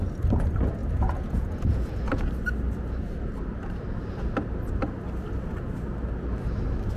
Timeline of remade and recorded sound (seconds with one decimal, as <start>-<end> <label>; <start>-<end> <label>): 0.0-0.8 recorded; 0.8-2.3 remade; 2.3-7.0 recorded